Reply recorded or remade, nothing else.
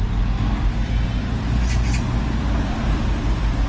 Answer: recorded